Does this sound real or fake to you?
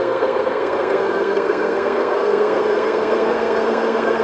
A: fake